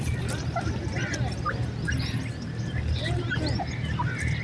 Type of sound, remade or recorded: recorded